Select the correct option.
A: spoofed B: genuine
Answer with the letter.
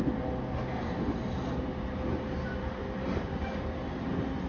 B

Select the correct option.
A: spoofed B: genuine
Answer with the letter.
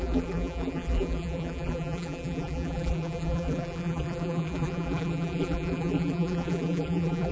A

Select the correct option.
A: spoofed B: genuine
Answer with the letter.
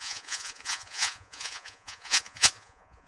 A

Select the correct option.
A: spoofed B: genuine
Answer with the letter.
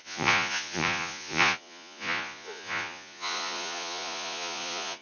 A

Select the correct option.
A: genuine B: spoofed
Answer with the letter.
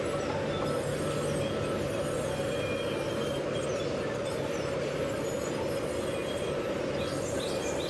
A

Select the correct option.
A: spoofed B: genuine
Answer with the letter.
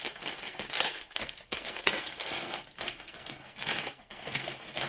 A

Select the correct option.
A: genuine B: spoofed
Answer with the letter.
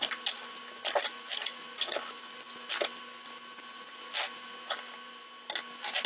A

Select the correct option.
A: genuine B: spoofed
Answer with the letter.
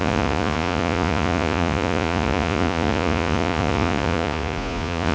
B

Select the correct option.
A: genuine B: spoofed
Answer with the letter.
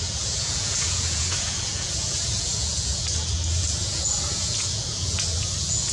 B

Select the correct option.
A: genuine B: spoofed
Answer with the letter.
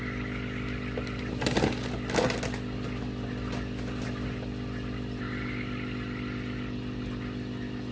A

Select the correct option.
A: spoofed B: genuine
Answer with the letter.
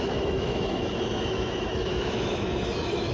A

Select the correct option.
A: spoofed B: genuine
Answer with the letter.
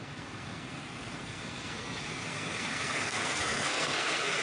A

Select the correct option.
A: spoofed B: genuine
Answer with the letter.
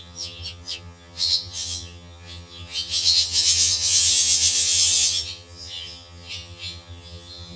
A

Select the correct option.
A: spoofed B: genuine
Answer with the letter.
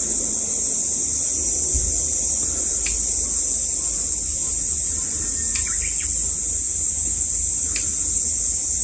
B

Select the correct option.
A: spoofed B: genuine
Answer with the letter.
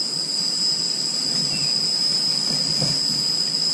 B